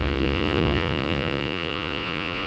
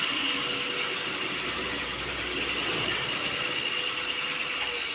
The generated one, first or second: first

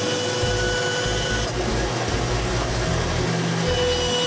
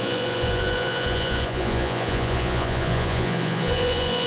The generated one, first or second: second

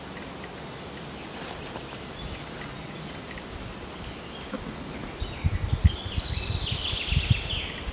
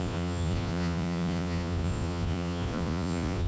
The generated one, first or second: second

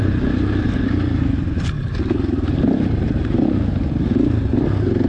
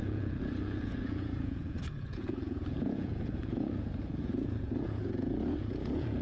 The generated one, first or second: second